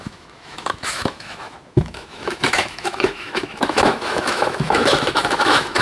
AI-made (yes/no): yes